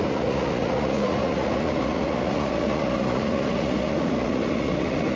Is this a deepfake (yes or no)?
yes